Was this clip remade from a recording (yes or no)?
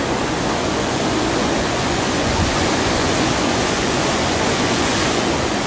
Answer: yes